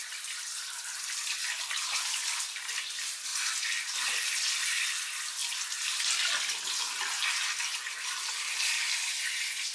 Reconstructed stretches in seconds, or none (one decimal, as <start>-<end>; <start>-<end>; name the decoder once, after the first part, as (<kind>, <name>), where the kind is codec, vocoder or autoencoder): 0.0-3.3 (vocoder, BigVGAN v2); 4.0-5.4; 7.6-9.7